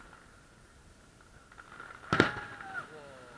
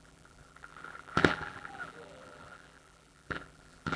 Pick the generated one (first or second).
second